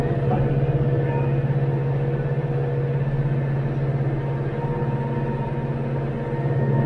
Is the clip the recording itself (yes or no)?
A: yes